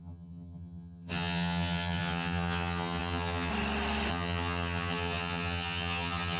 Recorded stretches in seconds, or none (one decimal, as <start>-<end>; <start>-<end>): 3.5-4.1

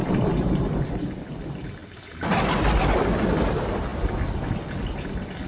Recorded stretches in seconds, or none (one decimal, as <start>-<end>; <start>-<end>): 0.0-5.5

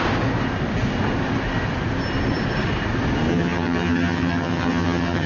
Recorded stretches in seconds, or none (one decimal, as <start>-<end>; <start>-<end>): 0.0-3.3

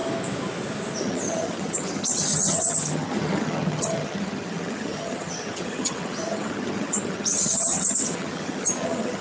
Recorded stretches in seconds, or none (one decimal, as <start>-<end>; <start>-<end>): 0.0-1.0

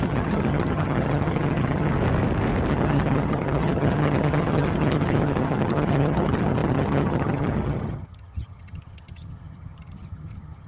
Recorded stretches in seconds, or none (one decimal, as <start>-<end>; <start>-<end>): 1.9-2.7

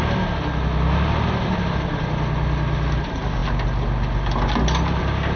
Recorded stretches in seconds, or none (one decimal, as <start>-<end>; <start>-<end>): 0.0-5.4

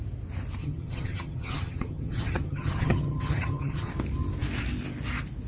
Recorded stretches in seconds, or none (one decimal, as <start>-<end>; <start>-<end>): 0.0-0.6; 3.9-5.5